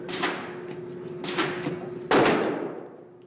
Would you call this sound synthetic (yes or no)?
no